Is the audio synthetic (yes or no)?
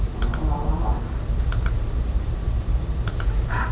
no